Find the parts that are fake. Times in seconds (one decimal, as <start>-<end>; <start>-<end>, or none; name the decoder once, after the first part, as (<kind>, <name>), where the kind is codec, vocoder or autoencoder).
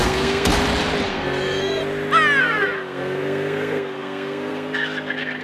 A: 0.0-0.5 (codec, SNAC); 1.1-1.8; 2.4-5.4